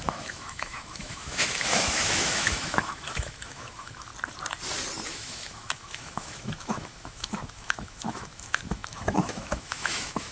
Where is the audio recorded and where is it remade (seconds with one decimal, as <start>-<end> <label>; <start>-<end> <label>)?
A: 0.0-4.1 remade; 4.1-5.1 recorded; 5.1-10.3 remade